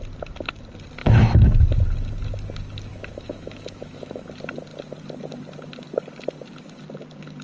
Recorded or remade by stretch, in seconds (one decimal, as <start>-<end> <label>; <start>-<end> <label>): 0.0-1.0 recorded; 1.0-1.6 remade; 1.6-2.9 recorded; 2.9-4.3 remade; 4.3-7.4 recorded